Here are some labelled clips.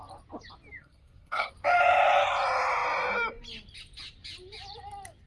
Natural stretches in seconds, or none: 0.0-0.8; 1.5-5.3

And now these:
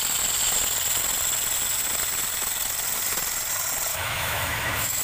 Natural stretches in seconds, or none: 0.0-3.9